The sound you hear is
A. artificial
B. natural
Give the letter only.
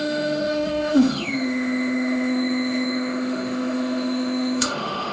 A